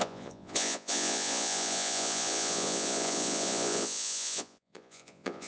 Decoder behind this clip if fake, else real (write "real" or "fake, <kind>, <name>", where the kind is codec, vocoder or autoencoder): fake, vocoder, Vocos